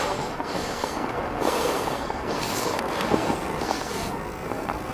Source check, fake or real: fake